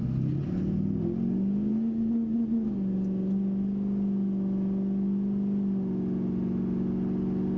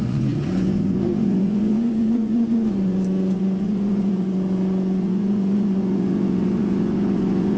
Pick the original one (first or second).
first